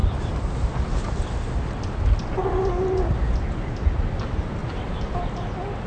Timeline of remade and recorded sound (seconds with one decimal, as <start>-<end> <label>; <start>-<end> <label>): 0.0-5.9 recorded